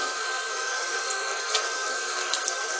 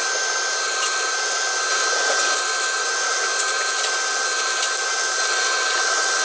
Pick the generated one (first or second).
first